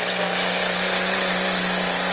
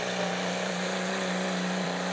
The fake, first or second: second